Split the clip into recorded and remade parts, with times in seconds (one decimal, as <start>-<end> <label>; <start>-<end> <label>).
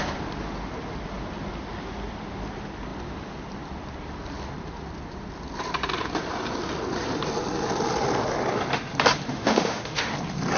0.0-9.3 recorded; 9.3-10.1 remade; 10.1-10.6 recorded